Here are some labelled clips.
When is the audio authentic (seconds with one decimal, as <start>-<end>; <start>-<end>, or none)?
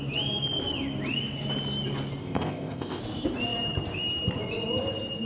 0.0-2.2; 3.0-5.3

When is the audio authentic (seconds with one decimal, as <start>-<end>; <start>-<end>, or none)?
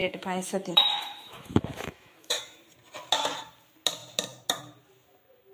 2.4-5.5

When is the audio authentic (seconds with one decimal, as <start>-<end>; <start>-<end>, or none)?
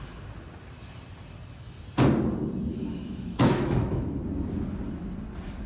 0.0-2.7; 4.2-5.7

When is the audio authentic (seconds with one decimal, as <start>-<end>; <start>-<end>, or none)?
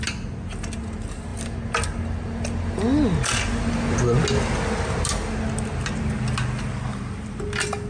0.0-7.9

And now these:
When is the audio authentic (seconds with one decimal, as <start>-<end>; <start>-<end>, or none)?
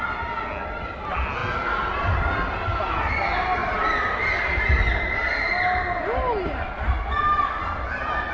0.0-8.3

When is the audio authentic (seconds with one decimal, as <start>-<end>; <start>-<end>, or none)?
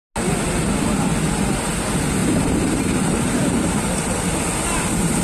0.0-5.2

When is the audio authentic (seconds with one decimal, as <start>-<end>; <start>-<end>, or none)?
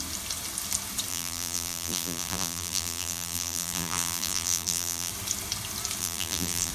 0.0-1.1; 5.1-6.0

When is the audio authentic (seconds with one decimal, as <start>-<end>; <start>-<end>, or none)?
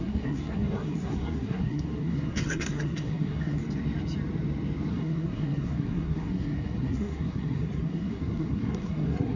3.6-4.9